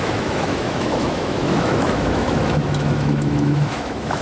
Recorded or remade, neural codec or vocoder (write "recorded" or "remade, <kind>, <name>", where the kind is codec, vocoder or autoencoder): remade, autoencoder, DAC-VAE